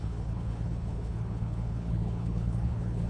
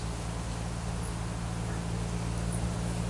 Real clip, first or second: second